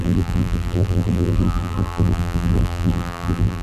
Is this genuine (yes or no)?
no